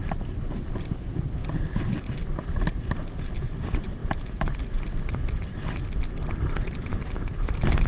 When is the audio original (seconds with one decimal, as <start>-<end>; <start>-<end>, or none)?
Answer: 0.0-7.9